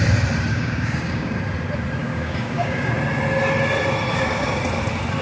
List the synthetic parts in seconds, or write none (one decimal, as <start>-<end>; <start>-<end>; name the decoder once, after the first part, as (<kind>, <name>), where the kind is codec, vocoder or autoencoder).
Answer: 0.5-1.4 (codec, DAC); 2.0-2.9; 4.1-4.6